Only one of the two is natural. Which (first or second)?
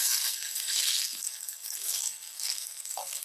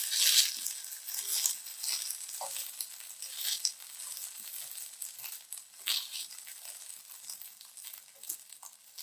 second